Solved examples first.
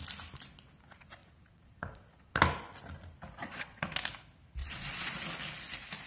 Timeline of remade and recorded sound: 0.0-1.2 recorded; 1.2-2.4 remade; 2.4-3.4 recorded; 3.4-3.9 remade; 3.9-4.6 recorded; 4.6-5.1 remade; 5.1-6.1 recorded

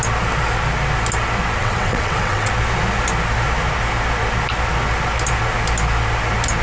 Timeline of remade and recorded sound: 0.0-1.6 recorded; 1.6-2.5 remade; 2.5-6.6 recorded

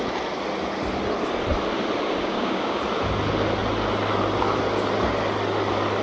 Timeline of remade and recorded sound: 0.0-2.2 recorded; 2.2-2.8 remade; 2.8-6.0 recorded

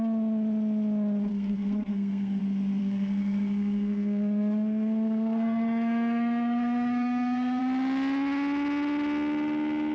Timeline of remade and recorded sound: 0.0-1.3 recorded; 1.3-2.4 remade; 2.4-2.8 recorded; 2.8-7.6 remade; 7.6-9.9 recorded

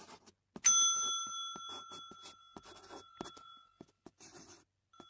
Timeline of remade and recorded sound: 0.0-5.1 recorded

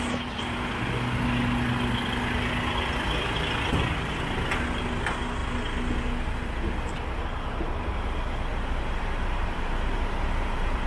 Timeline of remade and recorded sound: 0.0-8.5 recorded; 8.5-10.9 remade

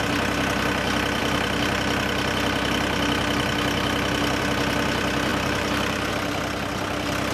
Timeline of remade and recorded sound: 0.0-5.3 recorded; 5.3-6.1 remade; 6.1-7.3 recorded

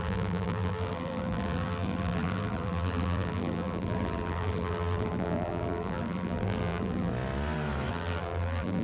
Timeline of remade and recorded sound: 0.0-7.1 remade; 7.1-7.9 recorded; 7.9-8.8 remade